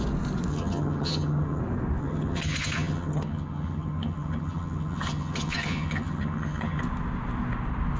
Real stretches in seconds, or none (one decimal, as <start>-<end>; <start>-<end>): 0.0-0.5; 1.6-2.0; 6.8-8.0

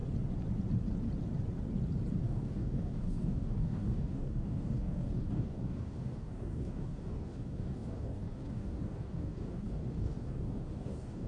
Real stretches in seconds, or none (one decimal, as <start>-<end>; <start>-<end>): 0.0-2.2

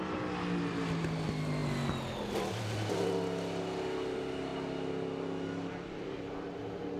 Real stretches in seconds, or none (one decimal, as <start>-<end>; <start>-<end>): 0.0-7.0

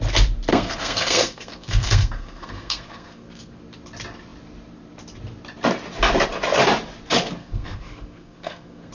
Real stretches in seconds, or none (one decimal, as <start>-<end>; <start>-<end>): 0.0-0.5; 3.6-7.4

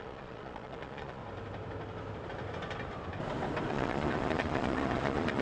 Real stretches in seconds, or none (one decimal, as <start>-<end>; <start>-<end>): 1.2-3.7

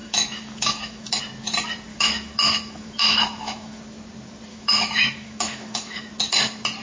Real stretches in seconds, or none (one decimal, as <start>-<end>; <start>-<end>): 1.2-1.9; 3.8-4.5; 6.1-6.8